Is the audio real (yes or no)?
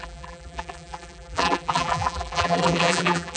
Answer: no